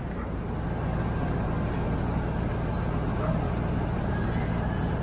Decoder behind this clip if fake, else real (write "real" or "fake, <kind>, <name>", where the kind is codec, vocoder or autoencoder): real